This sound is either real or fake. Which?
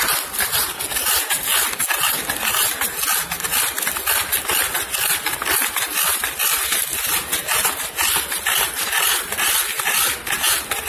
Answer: real